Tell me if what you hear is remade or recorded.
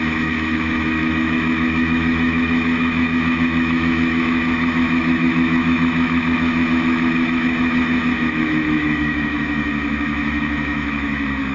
remade